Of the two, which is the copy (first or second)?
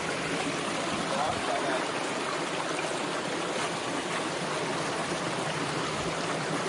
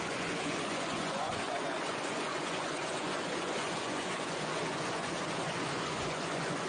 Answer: second